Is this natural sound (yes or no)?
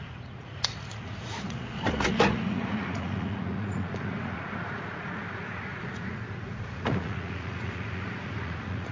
no